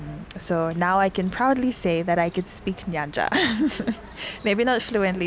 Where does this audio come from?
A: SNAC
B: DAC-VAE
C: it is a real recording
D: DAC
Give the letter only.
C